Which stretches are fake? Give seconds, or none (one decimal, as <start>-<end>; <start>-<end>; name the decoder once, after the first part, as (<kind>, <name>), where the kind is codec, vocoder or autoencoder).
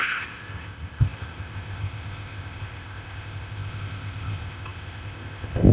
0.0-5.7 (codec, ZipCodec)